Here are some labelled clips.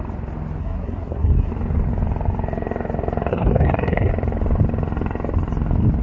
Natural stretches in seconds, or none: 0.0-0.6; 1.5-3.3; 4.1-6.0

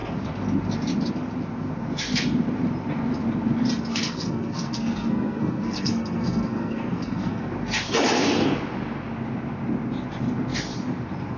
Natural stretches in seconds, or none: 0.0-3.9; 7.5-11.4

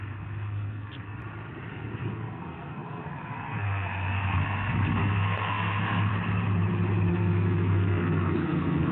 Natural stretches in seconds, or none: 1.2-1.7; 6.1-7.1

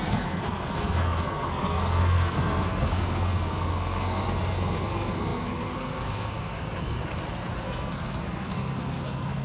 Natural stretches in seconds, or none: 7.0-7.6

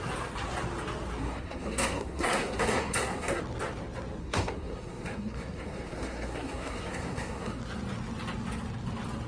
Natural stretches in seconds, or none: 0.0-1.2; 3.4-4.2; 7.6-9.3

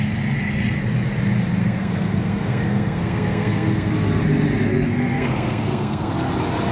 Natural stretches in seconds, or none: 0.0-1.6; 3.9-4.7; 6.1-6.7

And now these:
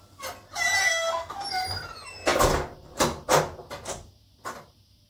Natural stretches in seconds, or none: 0.0-0.8; 1.3-5.1

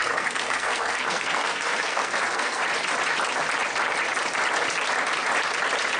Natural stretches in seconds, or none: 2.6-6.0